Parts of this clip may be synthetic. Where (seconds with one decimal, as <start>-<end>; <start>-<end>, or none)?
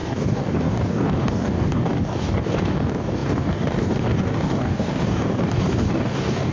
0.0-6.5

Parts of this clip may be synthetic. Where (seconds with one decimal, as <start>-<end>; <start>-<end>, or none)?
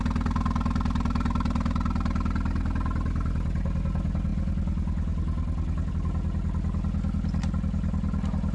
none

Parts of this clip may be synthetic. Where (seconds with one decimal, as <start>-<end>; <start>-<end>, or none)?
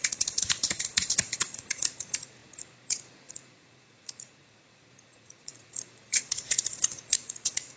0.0-7.8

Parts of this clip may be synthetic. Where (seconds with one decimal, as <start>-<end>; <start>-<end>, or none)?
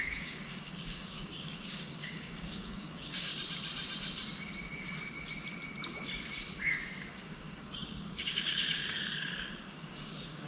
0.0-3.3; 7.1-10.5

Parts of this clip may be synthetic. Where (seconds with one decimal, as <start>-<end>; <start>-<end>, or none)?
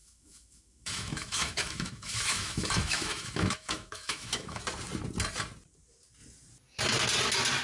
0.0-4.6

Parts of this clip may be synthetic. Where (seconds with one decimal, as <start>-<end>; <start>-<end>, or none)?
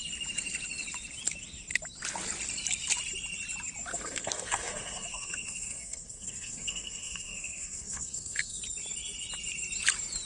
3.9-8.6